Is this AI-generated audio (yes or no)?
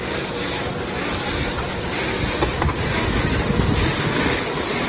no